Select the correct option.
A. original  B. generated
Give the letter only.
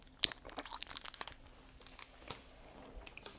A